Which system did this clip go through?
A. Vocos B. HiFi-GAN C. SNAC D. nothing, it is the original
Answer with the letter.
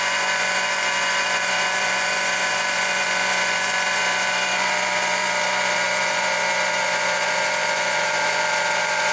A